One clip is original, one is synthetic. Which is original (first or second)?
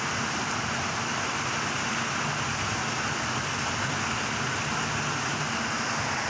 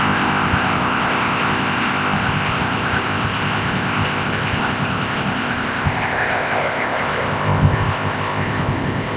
first